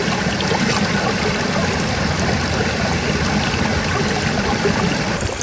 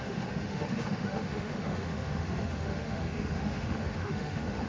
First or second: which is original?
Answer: first